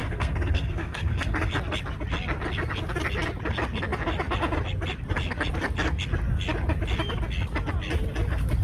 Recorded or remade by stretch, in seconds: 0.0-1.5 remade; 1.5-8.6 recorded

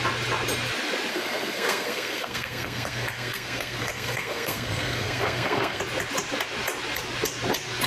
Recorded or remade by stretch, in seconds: 0.0-1.1 recorded; 1.1-5.8 remade; 5.8-7.9 recorded

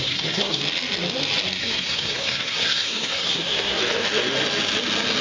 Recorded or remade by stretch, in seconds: 0.0-0.6 remade; 0.6-1.6 recorded; 1.6-3.8 remade; 3.8-5.2 recorded